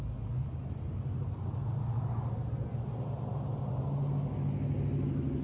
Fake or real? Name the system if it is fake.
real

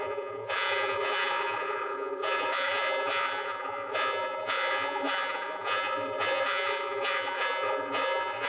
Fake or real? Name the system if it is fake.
fake, vocoder, Vocos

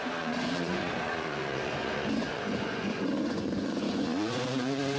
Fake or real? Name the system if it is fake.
fake, vocoder, Vocos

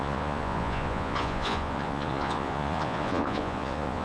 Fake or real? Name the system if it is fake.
fake, vocoder, Vocos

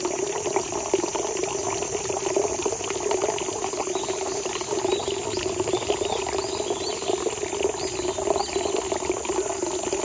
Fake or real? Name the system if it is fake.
real